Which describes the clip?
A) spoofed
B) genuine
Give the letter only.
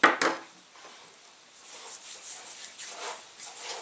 B